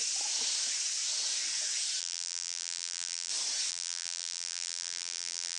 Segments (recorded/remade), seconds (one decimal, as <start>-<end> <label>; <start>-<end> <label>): 0.0-2.0 recorded; 2.0-3.3 remade; 3.3-3.7 recorded; 3.7-5.6 remade